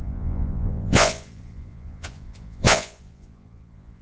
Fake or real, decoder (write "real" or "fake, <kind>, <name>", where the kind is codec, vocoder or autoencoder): fake, vocoder, Vocos